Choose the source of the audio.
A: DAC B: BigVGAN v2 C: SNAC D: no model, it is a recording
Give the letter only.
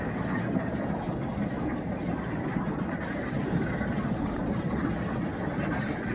D